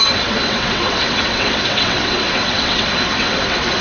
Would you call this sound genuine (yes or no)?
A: no